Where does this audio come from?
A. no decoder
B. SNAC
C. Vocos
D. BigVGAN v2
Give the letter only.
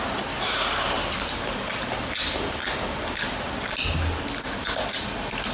A